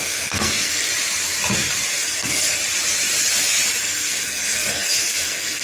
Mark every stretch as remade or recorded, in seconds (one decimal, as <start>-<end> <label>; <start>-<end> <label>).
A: 0.0-0.9 remade; 0.9-1.9 recorded; 1.9-2.6 remade; 2.6-3.8 recorded; 3.8-5.6 remade